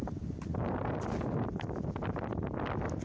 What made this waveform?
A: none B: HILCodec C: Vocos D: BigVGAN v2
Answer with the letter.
A